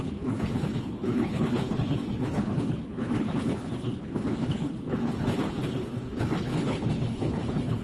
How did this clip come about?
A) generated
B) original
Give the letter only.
A